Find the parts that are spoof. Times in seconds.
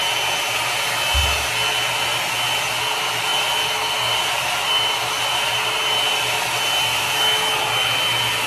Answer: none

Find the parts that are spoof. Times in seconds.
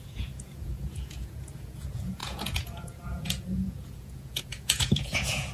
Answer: 0.0-5.5 (vocoder, Vocos)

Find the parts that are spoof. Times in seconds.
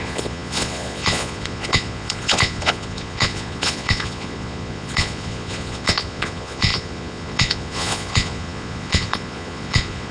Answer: 0.0-10.1 (vocoder, Vocos)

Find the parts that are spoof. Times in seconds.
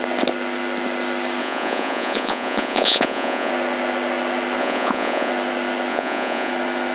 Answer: 1.4-3.5 (vocoder, Vocos); 4.6-5.3; 5.9-6.5